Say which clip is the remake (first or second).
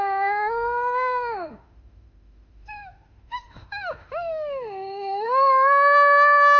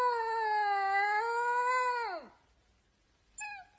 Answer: first